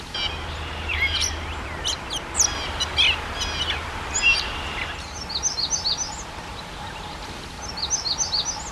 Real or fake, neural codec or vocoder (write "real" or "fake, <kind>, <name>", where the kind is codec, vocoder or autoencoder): real